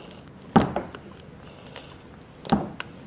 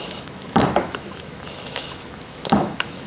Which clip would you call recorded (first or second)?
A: first